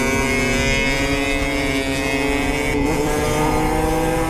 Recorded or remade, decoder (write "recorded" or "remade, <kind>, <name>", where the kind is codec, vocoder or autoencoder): recorded